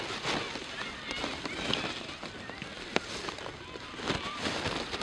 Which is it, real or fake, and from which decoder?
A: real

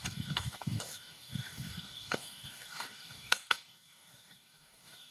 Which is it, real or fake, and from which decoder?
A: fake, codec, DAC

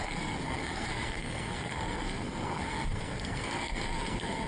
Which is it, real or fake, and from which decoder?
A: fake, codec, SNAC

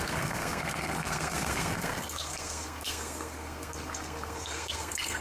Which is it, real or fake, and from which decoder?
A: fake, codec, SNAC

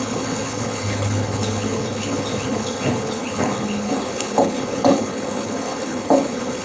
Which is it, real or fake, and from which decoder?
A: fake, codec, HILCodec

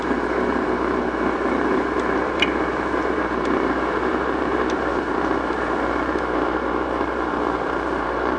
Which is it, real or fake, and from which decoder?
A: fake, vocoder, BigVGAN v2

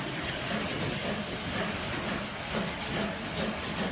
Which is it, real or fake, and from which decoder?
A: real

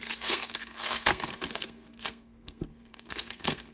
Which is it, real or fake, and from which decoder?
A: fake, codec, SNAC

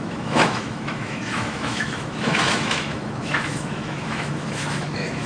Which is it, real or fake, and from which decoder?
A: fake, autoencoder, DAC-VAE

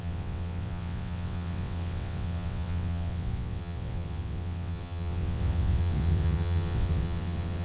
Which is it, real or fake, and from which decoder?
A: fake, vocoder, WaveNeXt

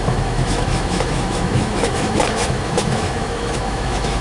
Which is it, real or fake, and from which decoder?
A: fake, autoencoder, DAC-VAE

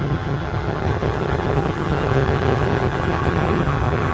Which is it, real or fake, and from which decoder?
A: fake, vocoder, HiFi-GAN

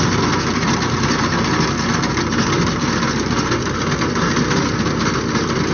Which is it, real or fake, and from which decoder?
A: real